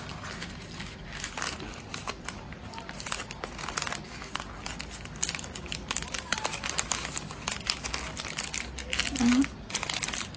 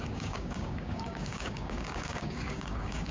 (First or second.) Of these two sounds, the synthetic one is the second